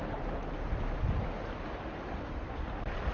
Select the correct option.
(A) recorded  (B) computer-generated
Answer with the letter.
A